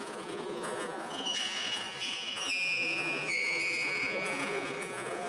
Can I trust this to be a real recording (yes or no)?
no